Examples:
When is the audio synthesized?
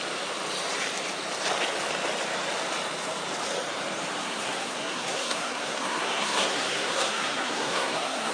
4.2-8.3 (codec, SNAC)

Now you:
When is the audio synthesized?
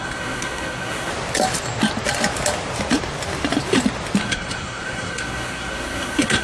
0.0-1.1 (codec, SNAC); 4.2-6.4